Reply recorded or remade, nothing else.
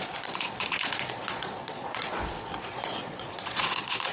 remade